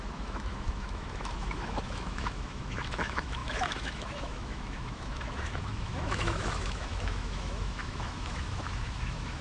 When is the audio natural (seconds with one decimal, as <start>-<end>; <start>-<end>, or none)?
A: none